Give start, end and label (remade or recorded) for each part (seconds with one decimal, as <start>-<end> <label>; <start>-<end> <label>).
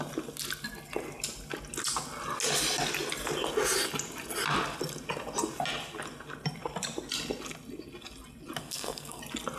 0.0-8.6 recorded; 8.6-9.2 remade; 9.2-9.6 recorded